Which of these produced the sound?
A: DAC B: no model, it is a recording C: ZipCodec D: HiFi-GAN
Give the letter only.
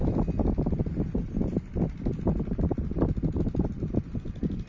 B